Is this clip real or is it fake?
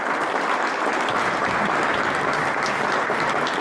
real